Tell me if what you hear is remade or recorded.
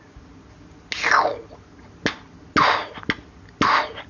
recorded